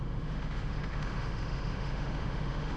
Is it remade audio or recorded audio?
remade